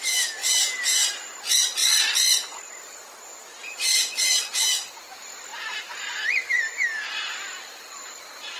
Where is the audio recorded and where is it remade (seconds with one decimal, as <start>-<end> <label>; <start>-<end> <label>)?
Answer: 0.0-1.8 remade; 1.8-2.8 recorded; 2.8-8.6 remade